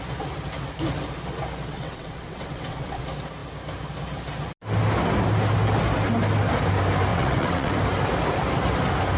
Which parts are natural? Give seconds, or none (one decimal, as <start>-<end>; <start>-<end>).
0.0-1.7; 3.0-7.1; 7.7-9.2